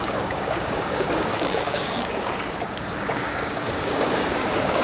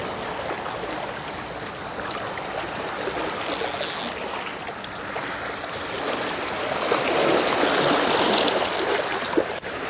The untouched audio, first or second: second